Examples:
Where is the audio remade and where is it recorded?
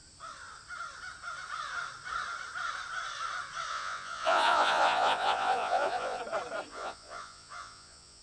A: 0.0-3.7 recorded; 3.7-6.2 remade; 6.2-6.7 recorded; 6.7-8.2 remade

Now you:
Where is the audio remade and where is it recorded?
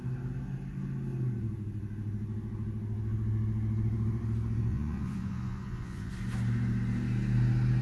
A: 0.0-4.7 recorded; 4.7-6.1 remade; 6.1-7.8 recorded